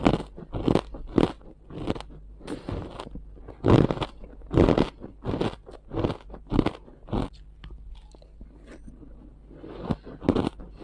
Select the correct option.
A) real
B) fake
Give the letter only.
A